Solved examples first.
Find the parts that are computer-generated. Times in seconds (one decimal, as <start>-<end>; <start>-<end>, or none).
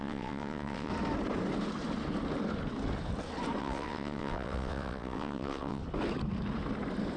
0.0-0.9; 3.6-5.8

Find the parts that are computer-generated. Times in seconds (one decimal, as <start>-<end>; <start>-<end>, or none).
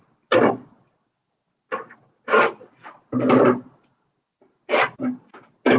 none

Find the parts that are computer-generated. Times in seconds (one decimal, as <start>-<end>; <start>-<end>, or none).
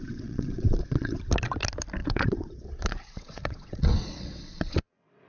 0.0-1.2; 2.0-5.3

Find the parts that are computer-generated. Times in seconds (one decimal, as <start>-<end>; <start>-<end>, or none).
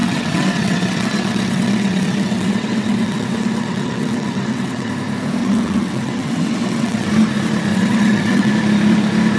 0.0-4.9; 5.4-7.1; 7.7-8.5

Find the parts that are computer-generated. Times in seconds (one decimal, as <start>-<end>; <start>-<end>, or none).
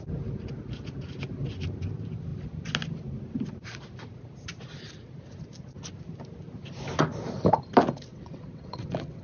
8.1-9.2